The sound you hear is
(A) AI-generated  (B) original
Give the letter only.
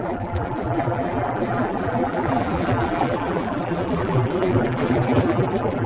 A